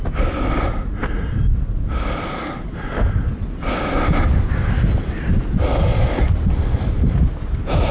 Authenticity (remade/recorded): remade